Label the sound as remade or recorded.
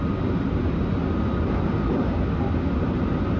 recorded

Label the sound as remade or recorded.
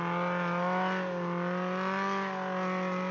recorded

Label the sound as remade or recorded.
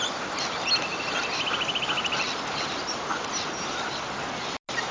recorded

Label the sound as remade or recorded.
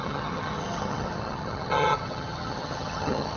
remade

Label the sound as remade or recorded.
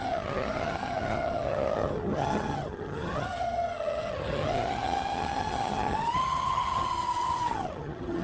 remade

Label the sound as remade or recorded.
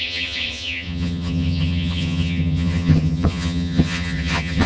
remade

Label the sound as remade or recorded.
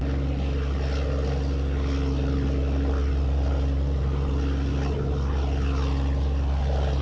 recorded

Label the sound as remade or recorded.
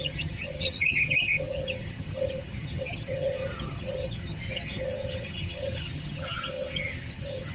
remade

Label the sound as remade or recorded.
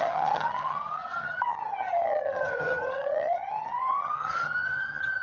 remade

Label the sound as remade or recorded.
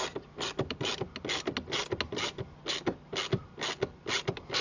recorded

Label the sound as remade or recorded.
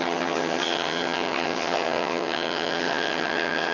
remade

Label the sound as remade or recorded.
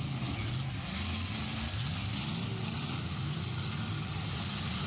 recorded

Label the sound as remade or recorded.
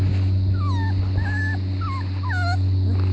recorded